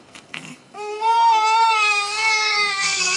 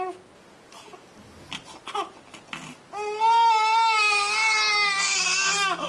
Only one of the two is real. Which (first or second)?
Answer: second